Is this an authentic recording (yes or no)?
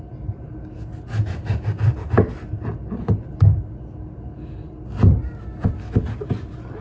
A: yes